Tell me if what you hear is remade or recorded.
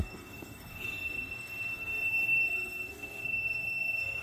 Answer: remade